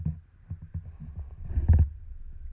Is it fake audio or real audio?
real